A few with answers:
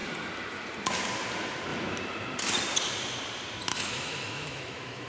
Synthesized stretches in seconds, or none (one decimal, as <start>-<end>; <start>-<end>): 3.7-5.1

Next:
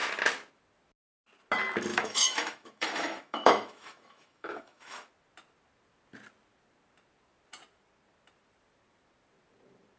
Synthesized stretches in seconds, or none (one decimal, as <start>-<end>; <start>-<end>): 1.9-5.1

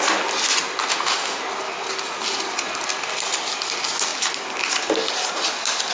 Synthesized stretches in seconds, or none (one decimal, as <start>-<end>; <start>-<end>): 0.9-1.4

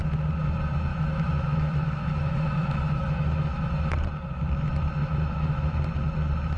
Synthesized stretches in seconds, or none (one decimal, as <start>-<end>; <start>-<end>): 0.9-3.7; 5.0-5.8